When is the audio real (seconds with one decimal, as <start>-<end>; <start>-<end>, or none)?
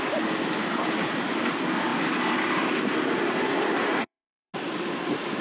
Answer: 0.0-4.0; 4.5-5.4